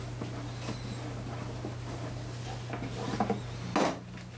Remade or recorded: recorded